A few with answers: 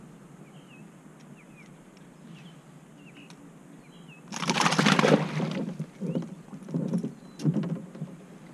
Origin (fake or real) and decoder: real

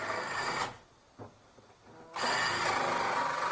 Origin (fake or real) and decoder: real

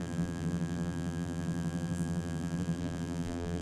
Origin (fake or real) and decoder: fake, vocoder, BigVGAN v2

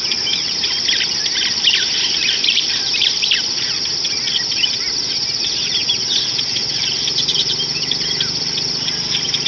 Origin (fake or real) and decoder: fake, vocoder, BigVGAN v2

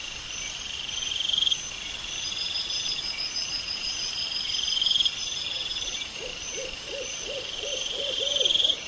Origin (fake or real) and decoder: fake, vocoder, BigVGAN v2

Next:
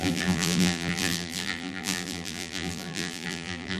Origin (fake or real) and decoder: fake, vocoder, BigVGAN v2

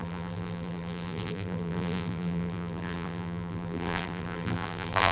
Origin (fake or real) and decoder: fake, vocoder, BigVGAN v2